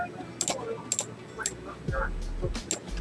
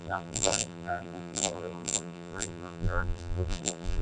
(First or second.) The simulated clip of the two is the second